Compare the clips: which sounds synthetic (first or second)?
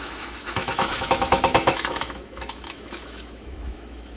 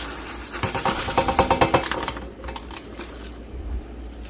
first